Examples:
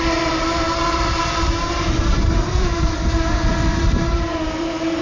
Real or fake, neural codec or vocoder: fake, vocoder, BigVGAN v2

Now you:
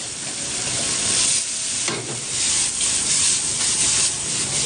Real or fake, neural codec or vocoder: real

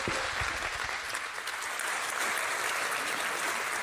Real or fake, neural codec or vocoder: real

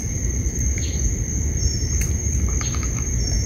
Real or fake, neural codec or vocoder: fake, vocoder, BigVGAN v2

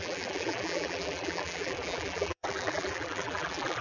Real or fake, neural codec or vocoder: fake, vocoder, BigVGAN v2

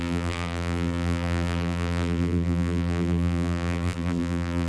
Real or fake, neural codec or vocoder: fake, vocoder, BigVGAN v2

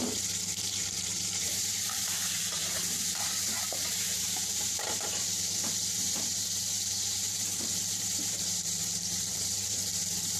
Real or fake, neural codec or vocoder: fake, vocoder, BigVGAN v2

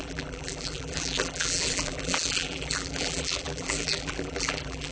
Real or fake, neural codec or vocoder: fake, vocoder, BigVGAN v2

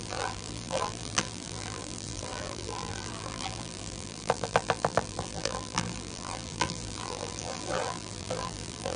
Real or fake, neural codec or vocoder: fake, vocoder, BigVGAN v2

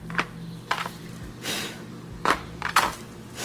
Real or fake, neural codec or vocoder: fake, vocoder, BigVGAN v2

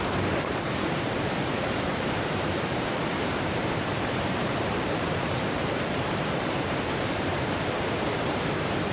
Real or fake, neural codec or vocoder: fake, vocoder, BigVGAN v2